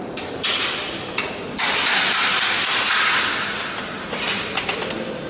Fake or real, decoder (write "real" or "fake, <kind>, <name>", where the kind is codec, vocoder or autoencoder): real